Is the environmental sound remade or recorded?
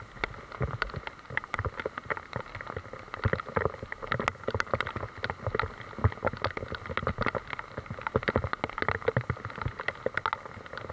recorded